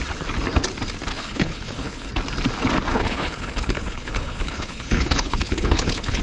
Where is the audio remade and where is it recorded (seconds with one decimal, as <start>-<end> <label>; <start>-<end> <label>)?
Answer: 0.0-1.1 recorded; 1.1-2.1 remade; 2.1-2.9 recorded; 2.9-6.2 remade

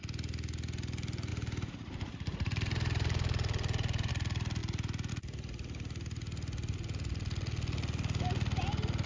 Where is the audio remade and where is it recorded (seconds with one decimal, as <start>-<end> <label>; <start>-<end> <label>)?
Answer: 0.0-1.3 recorded; 1.3-4.1 remade; 4.1-4.6 recorded; 4.6-5.1 remade; 5.1-9.1 recorded

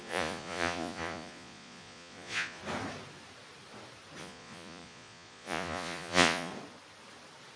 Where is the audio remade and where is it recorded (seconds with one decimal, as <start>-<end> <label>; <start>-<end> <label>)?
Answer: 0.0-2.6 remade; 2.6-4.2 recorded; 4.2-6.5 remade; 6.5-7.6 recorded

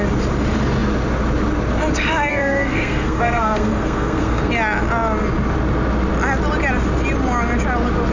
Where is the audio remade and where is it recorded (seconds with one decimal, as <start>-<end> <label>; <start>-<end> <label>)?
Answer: 0.0-2.3 recorded; 2.3-4.5 remade; 4.5-8.1 recorded